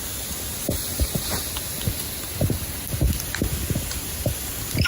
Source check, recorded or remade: recorded